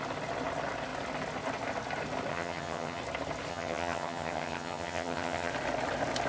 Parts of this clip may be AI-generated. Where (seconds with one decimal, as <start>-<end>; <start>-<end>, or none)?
2.3-3.0; 3.5-5.5

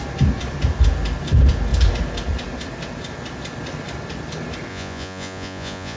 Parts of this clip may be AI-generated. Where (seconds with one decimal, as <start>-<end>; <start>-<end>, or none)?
4.7-6.0

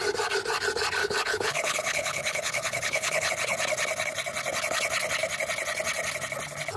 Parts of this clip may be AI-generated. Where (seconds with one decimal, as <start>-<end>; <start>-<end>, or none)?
1.0-3.3

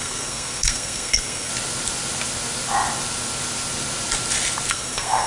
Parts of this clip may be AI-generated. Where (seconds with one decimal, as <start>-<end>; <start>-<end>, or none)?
0.0-1.5; 4.7-5.3

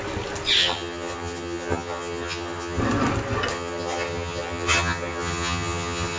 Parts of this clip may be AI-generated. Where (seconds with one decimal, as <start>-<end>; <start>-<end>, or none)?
0.6-2.8; 3.5-6.2